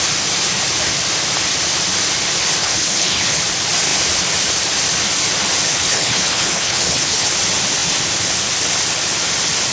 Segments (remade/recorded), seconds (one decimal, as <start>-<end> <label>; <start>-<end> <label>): 0.0-2.6 recorded; 2.6-3.4 remade; 3.4-5.7 recorded; 5.7-7.3 remade; 7.3-9.7 recorded